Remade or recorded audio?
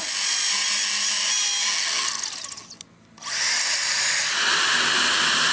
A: recorded